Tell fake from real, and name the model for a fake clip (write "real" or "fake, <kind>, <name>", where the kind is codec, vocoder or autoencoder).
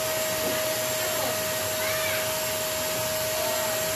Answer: real